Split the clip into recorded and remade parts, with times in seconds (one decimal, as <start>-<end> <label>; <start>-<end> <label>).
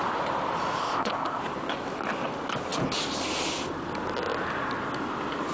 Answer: 0.0-0.8 recorded; 0.8-1.4 remade; 1.4-5.5 recorded